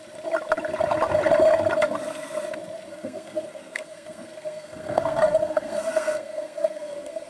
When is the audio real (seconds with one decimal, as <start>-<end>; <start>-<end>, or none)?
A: 0.0-2.9